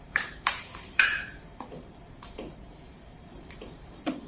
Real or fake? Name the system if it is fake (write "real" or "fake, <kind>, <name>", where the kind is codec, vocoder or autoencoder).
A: fake, vocoder, BigVGAN v2